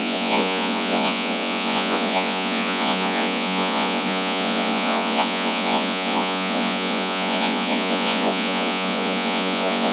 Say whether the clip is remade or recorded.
remade